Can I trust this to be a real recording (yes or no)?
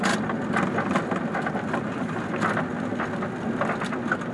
yes